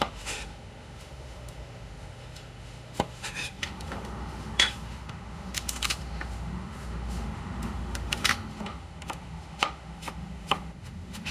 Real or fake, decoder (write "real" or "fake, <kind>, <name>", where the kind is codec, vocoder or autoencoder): fake, autoencoder, DAC-VAE